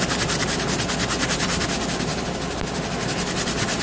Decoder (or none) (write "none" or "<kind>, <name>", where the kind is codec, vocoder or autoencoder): none